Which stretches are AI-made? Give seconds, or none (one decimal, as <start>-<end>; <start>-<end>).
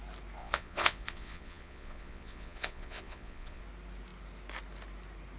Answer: 0.4-3.6